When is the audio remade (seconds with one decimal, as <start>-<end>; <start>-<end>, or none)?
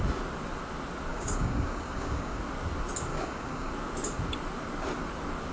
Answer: 1.1-2.4; 3.1-3.7